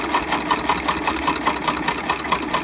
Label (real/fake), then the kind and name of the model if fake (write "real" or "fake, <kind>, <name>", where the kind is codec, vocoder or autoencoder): real